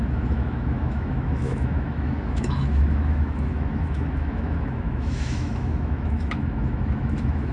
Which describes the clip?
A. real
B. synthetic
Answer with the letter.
B